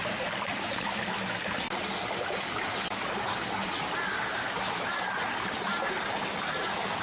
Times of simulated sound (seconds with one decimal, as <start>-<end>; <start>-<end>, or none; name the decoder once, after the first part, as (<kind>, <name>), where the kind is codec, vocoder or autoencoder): none

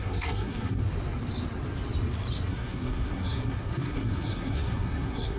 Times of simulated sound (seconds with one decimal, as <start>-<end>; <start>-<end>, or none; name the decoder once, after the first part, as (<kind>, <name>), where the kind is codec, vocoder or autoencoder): 0.0-0.8 (codec, SNAC); 2.5-5.4

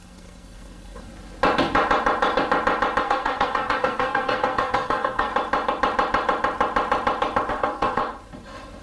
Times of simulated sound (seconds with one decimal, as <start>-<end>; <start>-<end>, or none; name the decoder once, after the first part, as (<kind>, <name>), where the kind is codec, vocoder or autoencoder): 0.0-1.1 (codec, SNAC); 3.0-5.3; 7.5-8.0

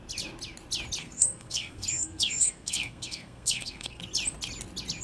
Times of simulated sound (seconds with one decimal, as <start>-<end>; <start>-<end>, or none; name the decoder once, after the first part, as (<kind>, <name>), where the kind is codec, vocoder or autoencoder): 1.0-4.0 (codec, SNAC)